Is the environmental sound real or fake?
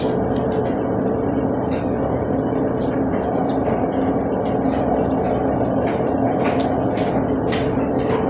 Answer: real